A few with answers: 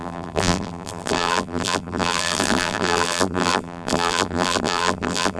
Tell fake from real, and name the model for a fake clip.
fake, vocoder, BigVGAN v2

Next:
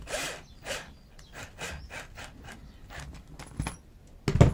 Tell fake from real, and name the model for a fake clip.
real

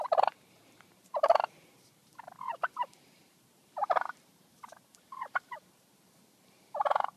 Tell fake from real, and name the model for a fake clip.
fake, vocoder, BigVGAN v2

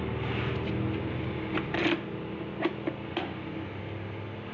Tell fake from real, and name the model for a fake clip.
real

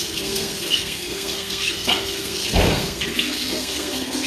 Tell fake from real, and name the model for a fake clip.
fake, codec, SNAC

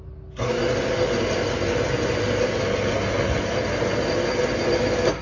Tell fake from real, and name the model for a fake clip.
real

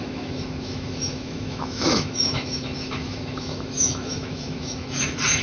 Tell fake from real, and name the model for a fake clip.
fake, autoencoder, DAC-VAE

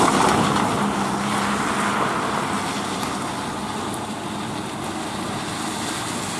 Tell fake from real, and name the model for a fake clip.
real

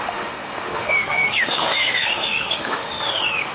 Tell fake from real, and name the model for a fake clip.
fake, autoencoder, DAC-VAE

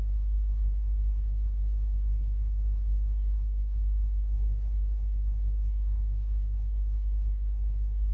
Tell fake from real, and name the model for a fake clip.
fake, codec, SNAC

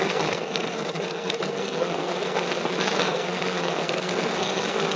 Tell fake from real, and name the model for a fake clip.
fake, codec, SNAC